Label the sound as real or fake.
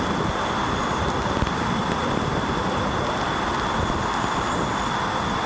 real